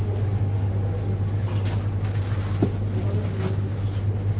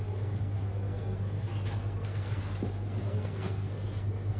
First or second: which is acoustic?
first